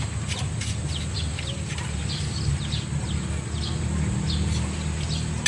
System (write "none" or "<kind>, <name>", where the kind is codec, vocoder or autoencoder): none